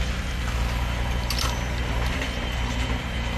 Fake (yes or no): no